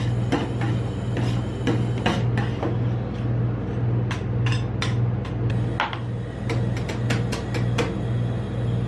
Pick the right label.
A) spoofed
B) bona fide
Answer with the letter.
B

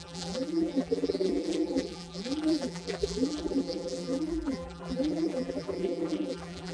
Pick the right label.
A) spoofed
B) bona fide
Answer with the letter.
A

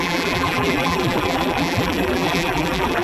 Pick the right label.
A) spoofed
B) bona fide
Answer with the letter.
A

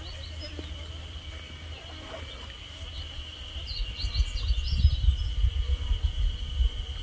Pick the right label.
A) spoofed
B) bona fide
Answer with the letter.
B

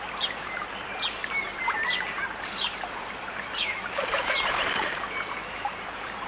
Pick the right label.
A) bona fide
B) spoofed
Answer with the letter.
B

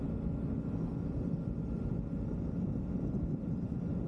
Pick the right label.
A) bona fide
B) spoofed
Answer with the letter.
A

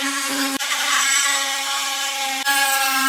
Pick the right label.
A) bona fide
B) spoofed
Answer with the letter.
B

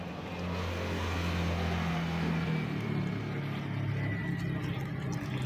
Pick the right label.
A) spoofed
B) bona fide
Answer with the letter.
B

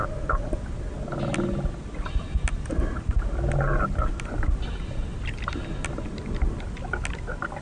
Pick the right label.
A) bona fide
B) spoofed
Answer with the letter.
A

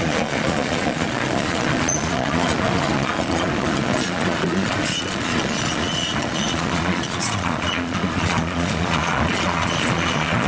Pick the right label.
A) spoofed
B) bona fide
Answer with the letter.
A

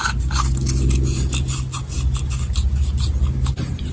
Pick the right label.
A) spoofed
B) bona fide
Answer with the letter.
B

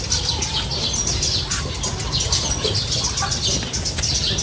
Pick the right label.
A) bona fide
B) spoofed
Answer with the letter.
A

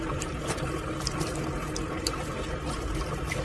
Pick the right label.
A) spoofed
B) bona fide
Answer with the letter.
B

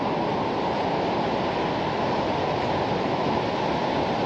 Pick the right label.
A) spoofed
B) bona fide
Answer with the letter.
B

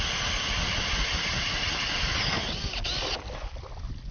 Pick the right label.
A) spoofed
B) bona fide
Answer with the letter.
B